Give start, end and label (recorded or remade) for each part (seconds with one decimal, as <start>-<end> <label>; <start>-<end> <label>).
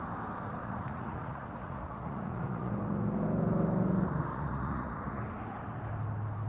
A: 0.0-0.6 recorded; 0.6-2.7 remade; 2.7-4.3 recorded; 4.3-5.2 remade; 5.2-6.5 recorded